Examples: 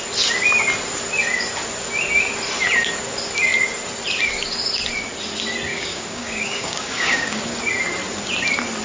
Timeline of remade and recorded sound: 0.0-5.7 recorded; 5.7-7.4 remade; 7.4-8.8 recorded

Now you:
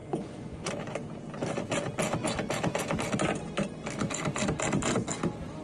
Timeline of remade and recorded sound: 0.0-0.7 remade; 0.7-5.6 recorded

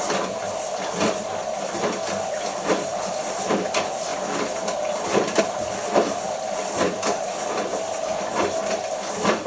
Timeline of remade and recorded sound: 0.0-9.5 recorded

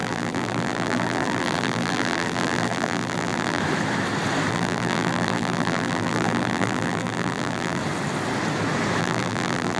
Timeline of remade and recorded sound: 0.0-3.6 remade; 3.6-4.5 recorded; 4.5-7.8 remade; 7.8-9.0 recorded; 9.0-9.8 remade

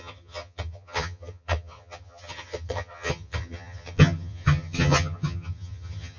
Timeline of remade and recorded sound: 0.0-6.2 remade

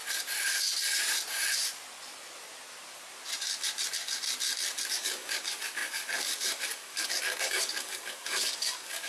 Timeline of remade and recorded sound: 0.0-4.9 recorded; 4.9-9.1 remade